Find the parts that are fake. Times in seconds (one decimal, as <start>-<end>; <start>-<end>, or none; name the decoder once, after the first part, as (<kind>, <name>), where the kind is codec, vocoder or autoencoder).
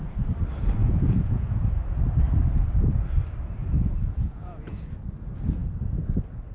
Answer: 0.8-1.5 (vocoder, Vocos); 3.6-4.6